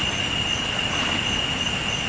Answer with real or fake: real